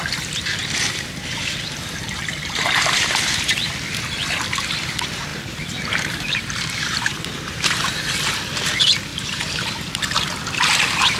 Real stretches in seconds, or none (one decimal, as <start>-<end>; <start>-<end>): 0.0-0.6; 3.7-5.3; 7.9-9.1; 9.8-11.2